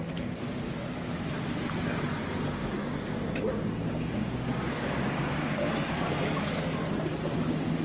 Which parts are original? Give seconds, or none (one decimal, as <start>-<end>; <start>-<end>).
0.0-2.6; 5.7-7.8